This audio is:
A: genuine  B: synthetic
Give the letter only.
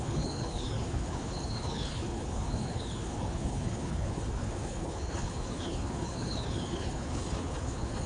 B